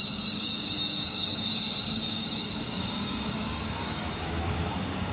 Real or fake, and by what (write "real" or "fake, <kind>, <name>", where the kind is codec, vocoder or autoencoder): fake, codec, DAC